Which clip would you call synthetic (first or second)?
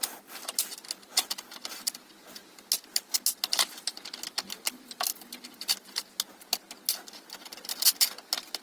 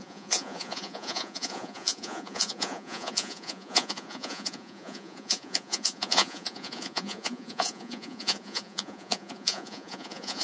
second